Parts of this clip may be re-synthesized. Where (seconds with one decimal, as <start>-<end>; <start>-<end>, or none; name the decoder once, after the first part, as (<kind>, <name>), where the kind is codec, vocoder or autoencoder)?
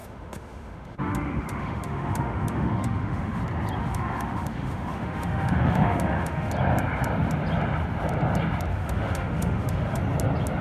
0.0-3.4 (autoencoder, DAC-VAE); 3.8-6.5; 8.7-10.0